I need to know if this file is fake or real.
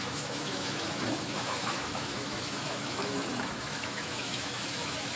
fake